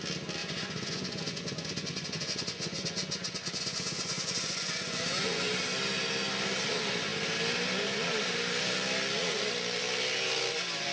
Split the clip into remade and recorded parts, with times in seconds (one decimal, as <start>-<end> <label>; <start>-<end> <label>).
0.0-0.4 recorded; 0.4-5.4 remade; 5.4-10.9 recorded

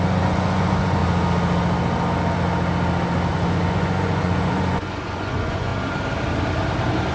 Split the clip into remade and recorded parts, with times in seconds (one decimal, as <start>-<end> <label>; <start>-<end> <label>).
0.0-1.0 remade; 1.0-3.3 recorded; 3.3-5.7 remade; 5.7-7.1 recorded

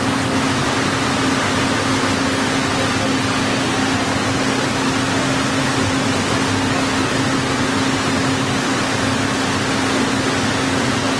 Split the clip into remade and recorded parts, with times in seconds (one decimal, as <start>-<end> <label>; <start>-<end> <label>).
0.0-11.2 recorded

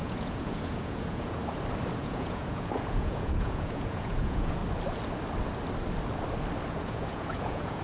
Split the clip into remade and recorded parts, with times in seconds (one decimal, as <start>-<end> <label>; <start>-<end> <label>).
0.0-1.4 remade; 1.4-2.0 recorded; 2.0-4.6 remade; 4.6-6.7 recorded; 6.7-7.8 remade

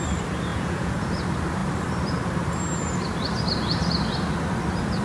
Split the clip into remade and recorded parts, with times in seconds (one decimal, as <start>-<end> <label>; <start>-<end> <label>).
0.0-0.5 recorded; 0.5-1.2 remade; 1.2-5.0 recorded